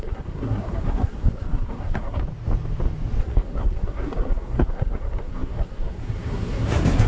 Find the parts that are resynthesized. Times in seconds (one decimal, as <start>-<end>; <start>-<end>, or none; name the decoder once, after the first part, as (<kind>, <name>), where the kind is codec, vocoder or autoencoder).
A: 0.0-2.2 (codec, SNAC); 3.2-7.1